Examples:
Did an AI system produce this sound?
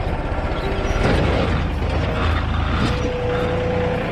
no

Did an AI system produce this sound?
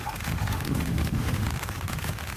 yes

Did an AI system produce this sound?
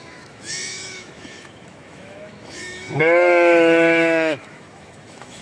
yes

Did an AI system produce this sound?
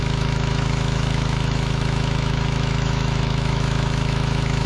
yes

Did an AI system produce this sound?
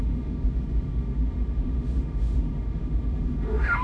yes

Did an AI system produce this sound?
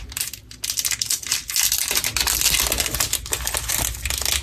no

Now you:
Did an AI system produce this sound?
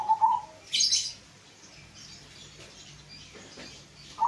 no